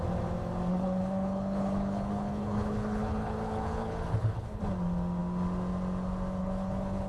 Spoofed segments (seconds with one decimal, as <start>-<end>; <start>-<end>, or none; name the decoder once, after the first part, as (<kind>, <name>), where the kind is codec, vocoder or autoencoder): 0.7-4.6 (codec, HILCodec); 6.4-7.1